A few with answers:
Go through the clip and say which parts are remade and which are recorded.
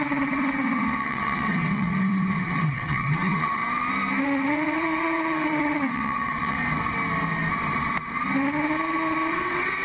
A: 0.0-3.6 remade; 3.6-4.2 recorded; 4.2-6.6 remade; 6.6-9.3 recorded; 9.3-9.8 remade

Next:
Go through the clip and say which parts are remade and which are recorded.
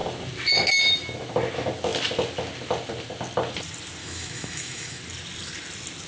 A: 0.0-4.0 recorded; 4.0-5.0 remade; 5.0-6.1 recorded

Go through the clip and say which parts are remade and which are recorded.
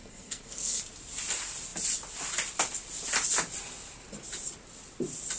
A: 0.0-0.8 remade; 0.8-5.4 recorded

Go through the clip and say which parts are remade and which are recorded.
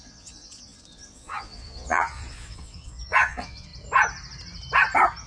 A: 0.0-3.7 remade; 3.7-5.3 recorded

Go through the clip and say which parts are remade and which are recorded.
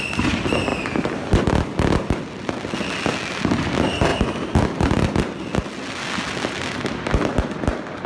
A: 0.0-8.1 recorded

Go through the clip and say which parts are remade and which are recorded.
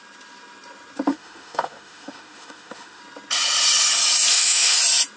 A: 0.0-1.1 recorded; 1.1-3.0 remade; 3.0-4.3 recorded; 4.3-4.8 remade; 4.8-5.2 recorded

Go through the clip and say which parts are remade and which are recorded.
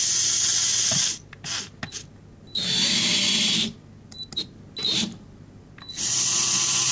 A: 0.0-6.9 recorded